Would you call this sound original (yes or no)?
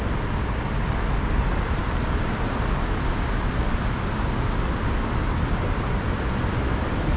yes